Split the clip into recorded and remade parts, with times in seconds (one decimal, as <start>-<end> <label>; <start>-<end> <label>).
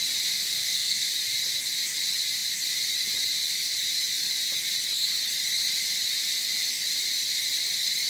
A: 0.0-0.4 recorded; 0.4-1.1 remade; 1.1-8.1 recorded